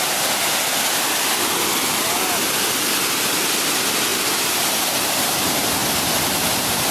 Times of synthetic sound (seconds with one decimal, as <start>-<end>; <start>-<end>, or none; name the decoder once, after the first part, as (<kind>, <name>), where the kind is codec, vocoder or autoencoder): none